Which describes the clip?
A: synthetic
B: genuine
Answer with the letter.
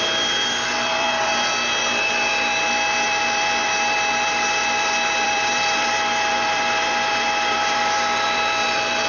A